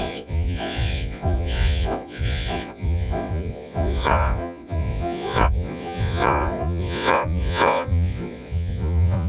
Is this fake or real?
fake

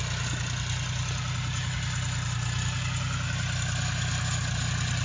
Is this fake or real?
real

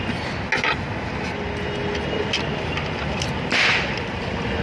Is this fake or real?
real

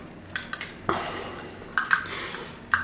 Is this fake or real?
real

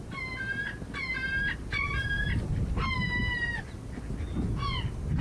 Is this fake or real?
real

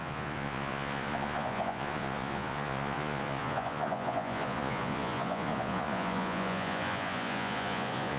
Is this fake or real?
fake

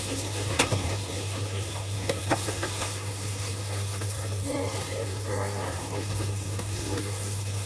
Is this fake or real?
fake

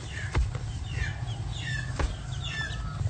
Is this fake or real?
real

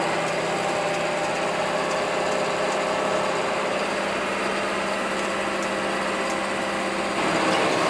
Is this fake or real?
real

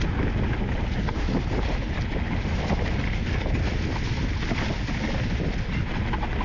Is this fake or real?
real